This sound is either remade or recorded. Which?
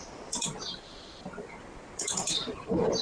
remade